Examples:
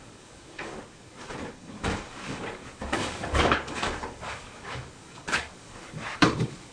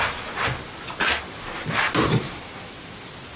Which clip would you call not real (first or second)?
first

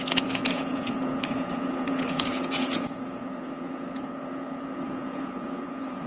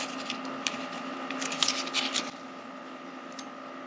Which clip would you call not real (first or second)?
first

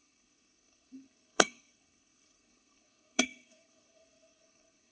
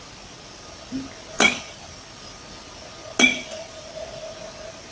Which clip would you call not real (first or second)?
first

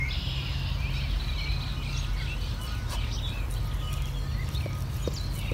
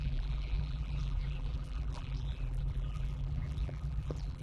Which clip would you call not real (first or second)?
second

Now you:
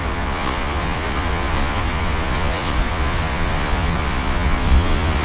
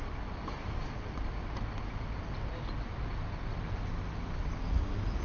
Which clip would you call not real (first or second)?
first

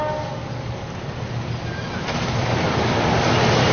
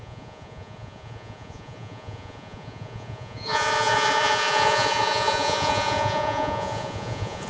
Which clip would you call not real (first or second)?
second